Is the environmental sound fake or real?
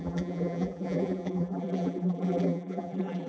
fake